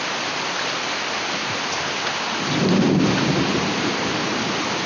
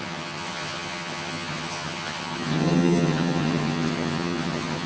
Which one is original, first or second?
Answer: first